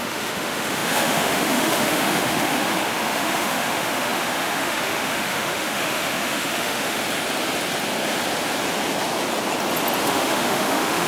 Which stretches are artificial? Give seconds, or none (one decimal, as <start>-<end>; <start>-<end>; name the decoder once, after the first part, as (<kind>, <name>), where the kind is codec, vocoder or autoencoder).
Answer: 0.0-7.0 (autoencoder, DAC-VAE); 10.0-11.1